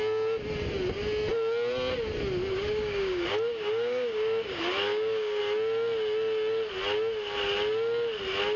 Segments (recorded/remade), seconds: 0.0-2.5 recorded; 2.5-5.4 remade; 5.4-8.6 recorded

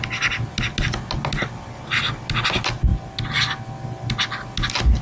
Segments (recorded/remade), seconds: 0.0-5.0 recorded

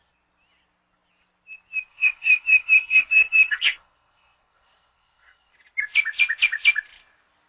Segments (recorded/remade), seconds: 0.0-1.9 recorded; 1.9-5.5 remade; 5.5-7.5 recorded

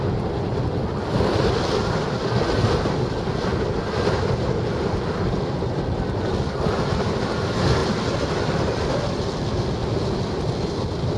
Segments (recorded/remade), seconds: 0.0-11.2 recorded